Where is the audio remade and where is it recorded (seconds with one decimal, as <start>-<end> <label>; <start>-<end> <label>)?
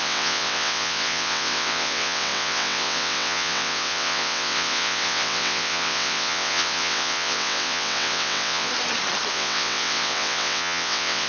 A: 0.0-8.7 remade; 8.7-9.3 recorded; 9.3-11.3 remade